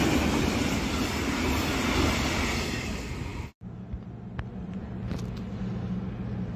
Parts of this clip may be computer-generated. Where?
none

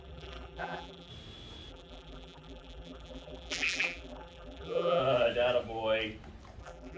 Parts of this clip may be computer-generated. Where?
0.0-1.1; 1.7-5.0; 6.6-7.0

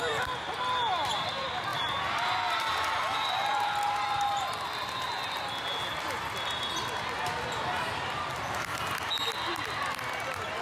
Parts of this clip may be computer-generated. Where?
none